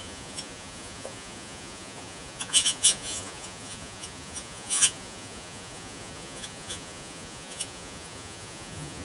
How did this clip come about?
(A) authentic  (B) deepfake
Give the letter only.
B